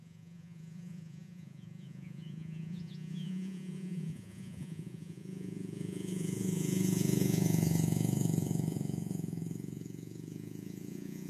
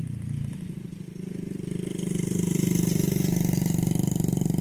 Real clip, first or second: second